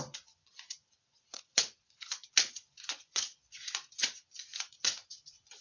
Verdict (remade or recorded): remade